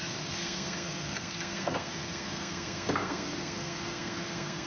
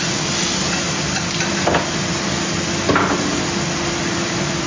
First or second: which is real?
second